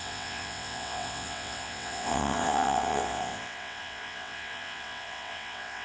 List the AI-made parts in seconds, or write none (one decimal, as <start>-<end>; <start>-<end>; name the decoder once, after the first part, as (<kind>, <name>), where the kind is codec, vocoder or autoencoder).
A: 0.0-5.8 (vocoder, WaveNeXt)